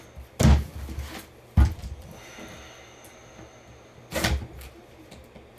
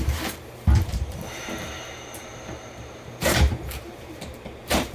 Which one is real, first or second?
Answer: first